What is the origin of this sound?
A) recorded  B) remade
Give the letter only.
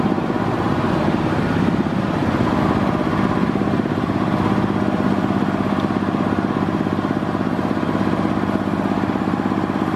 A